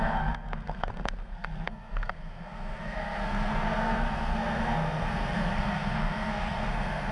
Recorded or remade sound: remade